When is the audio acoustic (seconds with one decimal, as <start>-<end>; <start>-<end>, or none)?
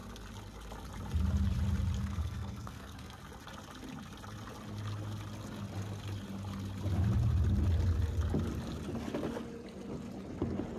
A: 0.0-2.0; 3.2-10.8